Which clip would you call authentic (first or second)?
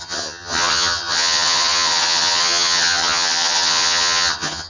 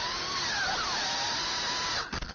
second